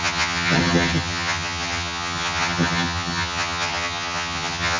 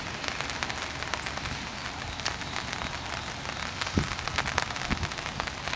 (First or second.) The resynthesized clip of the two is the first